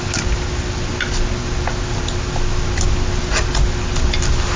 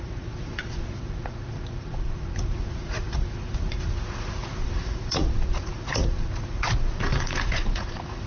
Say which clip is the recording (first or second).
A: first